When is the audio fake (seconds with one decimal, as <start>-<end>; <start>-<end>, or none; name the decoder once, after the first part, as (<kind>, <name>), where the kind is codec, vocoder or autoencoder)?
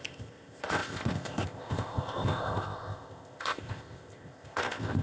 0.0-5.0 (codec, ZipCodec)